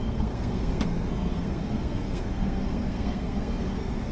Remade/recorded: remade